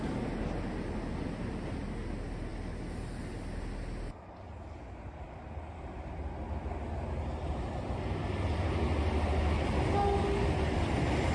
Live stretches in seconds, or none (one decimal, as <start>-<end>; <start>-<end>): 0.0-11.3